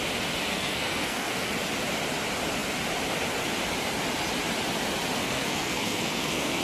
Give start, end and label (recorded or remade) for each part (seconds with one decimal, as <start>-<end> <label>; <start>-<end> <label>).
0.0-0.5 recorded; 0.5-1.5 remade; 1.5-5.2 recorded; 5.2-6.6 remade